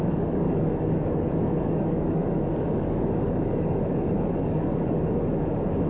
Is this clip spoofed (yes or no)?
yes